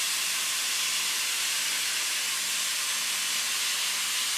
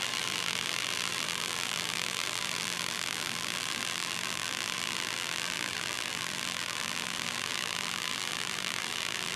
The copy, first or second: second